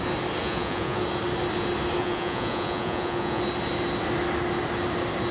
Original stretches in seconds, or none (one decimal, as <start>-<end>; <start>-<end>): 0.0-0.4; 1.0-2.0; 3.4-5.3